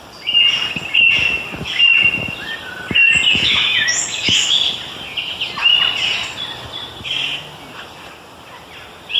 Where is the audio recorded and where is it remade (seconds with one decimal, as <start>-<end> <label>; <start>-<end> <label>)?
0.0-3.3 recorded; 3.3-4.5 remade; 4.5-9.2 recorded